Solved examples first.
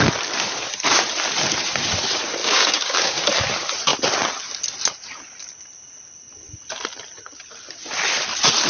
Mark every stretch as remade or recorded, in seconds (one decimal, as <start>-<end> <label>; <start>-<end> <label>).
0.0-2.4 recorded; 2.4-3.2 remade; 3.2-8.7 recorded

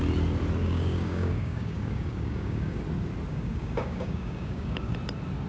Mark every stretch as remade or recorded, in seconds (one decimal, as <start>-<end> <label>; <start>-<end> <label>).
0.0-0.6 recorded; 0.6-2.8 remade; 2.8-3.3 recorded; 3.3-4.9 remade; 4.9-5.5 recorded

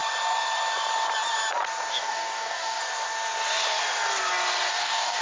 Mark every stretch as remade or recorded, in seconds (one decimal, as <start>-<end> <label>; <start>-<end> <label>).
0.0-1.9 recorded; 1.9-2.8 remade; 2.8-4.7 recorded; 4.7-5.2 remade

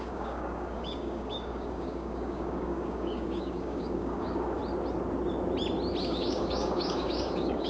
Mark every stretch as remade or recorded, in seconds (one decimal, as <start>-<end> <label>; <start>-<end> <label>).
0.0-4.6 remade; 4.6-6.0 recorded; 6.0-7.7 remade